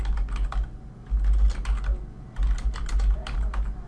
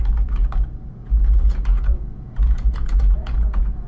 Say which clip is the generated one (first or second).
second